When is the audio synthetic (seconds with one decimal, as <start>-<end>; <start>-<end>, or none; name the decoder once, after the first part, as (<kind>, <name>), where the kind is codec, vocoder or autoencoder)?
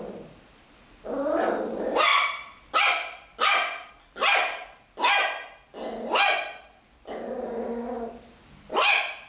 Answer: 2.1-3.9 (vocoder, BigVGAN v2)